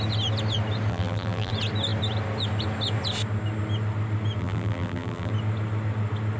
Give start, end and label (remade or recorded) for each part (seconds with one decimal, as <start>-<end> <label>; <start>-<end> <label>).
0.0-0.9 recorded; 0.9-1.5 remade; 1.5-4.4 recorded; 4.4-5.3 remade; 5.3-6.4 recorded